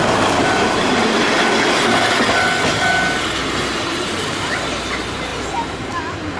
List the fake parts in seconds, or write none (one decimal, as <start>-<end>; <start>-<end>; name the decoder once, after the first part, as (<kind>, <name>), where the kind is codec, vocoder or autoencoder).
0.0-1.3 (vocoder, BigVGAN v2); 3.4-4.7